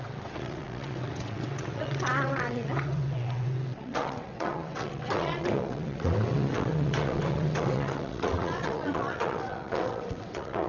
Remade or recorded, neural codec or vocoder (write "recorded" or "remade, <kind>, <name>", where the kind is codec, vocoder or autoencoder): remade, vocoder, WaveNeXt